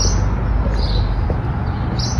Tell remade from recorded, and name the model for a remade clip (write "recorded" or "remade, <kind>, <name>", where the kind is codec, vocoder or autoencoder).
recorded